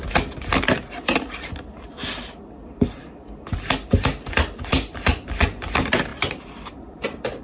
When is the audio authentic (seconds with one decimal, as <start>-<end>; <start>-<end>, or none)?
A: 0.0-7.4